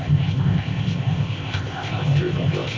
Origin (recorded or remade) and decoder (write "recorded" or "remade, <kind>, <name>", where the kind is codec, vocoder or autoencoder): remade, codec, ZipCodec